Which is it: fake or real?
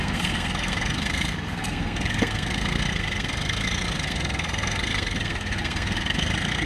fake